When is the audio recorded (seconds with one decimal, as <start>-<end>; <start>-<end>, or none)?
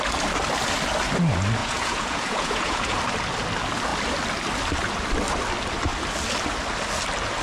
0.0-1.6; 3.0-7.4